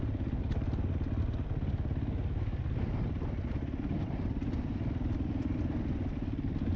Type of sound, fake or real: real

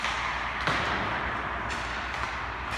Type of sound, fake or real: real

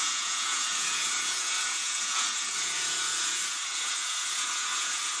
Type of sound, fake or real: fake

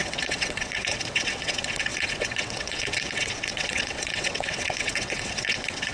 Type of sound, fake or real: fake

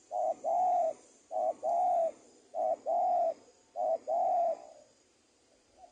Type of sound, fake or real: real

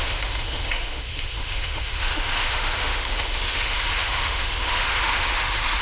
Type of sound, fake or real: fake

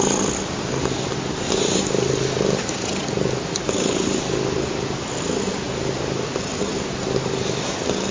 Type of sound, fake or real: real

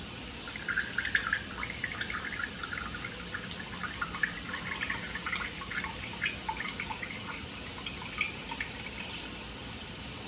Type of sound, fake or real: fake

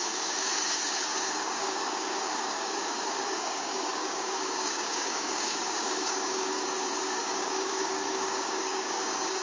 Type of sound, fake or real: fake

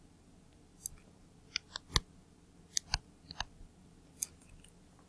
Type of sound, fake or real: real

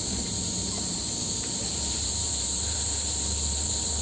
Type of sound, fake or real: fake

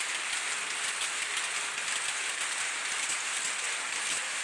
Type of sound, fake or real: real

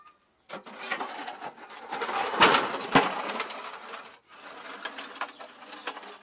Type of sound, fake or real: real